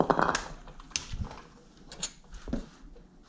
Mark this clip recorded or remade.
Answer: recorded